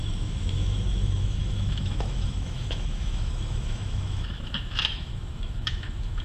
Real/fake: fake